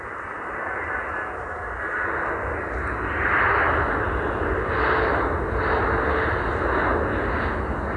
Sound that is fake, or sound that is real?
real